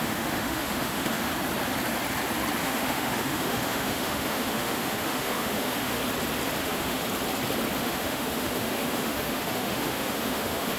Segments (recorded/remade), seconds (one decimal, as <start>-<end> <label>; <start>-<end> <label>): 0.0-1.3 remade; 1.3-2.6 recorded; 2.6-6.0 remade; 6.0-6.6 recorded; 6.6-7.0 remade; 7.0-7.8 recorded; 7.8-10.8 remade